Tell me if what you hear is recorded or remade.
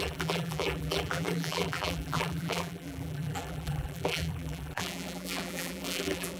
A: remade